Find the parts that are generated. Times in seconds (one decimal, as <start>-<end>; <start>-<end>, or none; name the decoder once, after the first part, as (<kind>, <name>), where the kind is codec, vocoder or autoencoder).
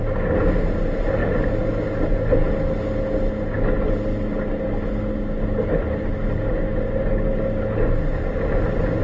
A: none